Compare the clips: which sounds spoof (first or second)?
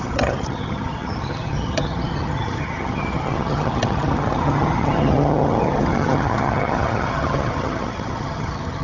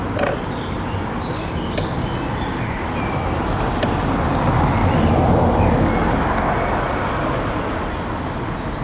first